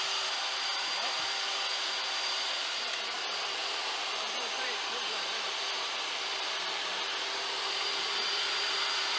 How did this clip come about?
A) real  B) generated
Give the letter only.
B